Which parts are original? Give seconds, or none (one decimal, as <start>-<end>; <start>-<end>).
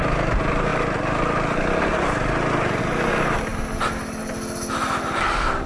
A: 0.0-5.7